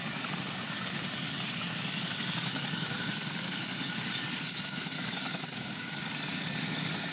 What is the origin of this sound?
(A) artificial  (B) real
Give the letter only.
A